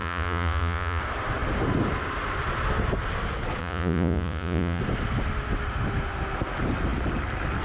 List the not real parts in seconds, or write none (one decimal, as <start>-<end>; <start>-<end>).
0.0-1.0; 3.6-4.8